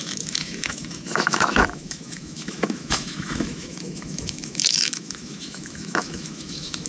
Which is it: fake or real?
fake